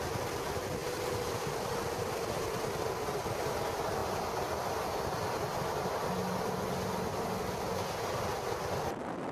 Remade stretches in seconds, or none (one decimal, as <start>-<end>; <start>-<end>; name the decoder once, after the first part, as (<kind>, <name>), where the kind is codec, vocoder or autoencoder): 0.8-2.4 (vocoder, BigVGAN v2)